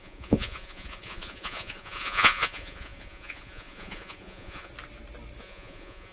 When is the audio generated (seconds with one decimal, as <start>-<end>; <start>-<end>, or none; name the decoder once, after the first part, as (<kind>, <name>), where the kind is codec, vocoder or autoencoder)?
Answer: 0.0-4.7 (vocoder, Vocos); 5.4-6.1